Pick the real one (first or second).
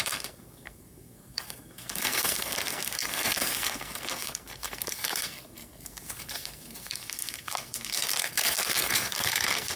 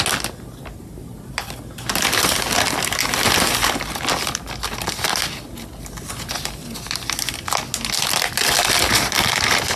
second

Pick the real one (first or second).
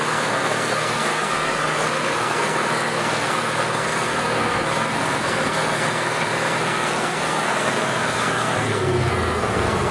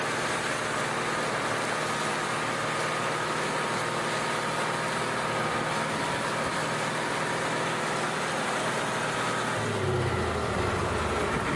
second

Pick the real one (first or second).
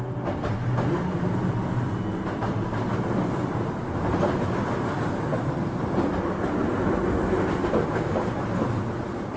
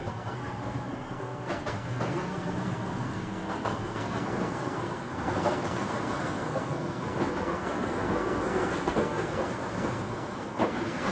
first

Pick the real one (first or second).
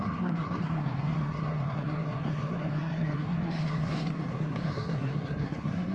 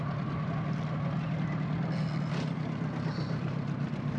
second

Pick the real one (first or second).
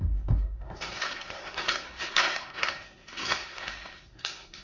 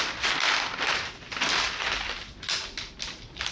second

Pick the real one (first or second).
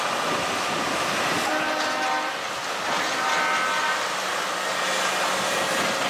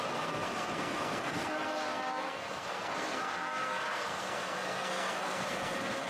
first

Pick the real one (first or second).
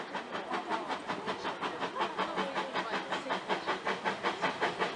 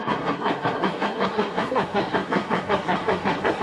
first